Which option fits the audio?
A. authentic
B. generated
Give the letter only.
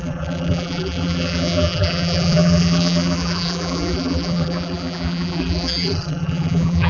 B